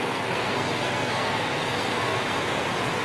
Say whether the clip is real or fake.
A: fake